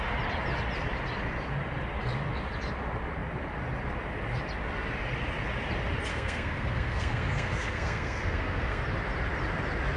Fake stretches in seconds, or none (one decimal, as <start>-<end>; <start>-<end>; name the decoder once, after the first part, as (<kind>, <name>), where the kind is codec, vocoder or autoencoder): 6.1-8.8 (codec, SNAC)